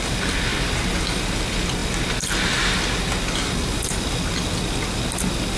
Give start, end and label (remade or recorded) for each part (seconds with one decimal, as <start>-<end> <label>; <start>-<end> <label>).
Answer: 0.0-5.6 recorded